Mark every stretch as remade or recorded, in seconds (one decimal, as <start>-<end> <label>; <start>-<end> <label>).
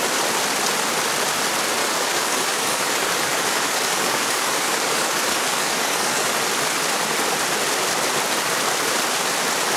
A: 0.0-1.8 recorded; 1.8-6.3 remade; 6.3-9.8 recorded